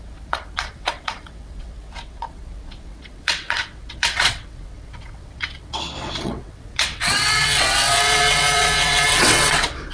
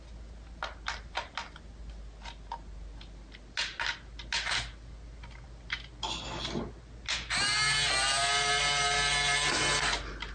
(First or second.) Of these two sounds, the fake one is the first